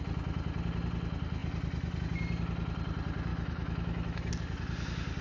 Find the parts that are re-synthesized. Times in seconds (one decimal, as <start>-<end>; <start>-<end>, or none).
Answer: 3.3-4.3